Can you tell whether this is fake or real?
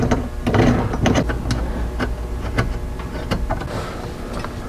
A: real